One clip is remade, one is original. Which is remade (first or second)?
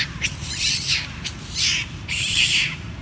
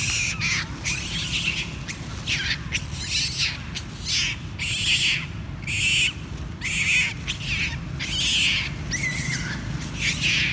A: first